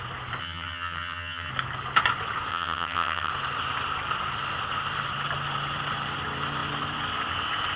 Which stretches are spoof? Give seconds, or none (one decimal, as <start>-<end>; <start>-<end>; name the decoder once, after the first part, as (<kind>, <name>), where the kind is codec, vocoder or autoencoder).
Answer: 0.4-1.5 (vocoder, HiFi-GAN); 2.5-3.3